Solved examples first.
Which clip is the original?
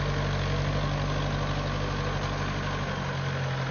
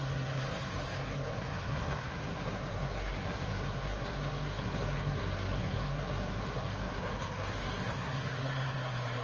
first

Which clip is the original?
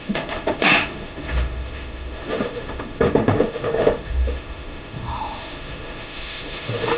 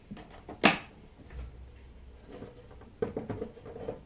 second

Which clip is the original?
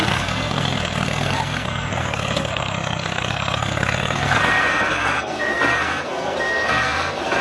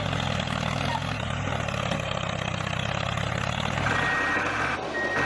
second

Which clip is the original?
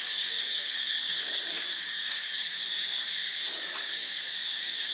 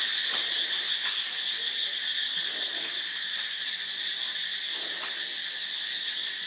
second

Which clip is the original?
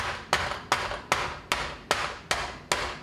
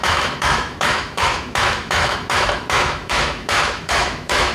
first